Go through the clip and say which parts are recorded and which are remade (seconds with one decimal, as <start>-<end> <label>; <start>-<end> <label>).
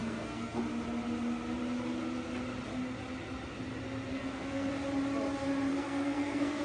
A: 0.0-0.6 remade; 0.6-4.1 recorded; 4.1-4.7 remade; 4.7-5.7 recorded; 5.7-6.6 remade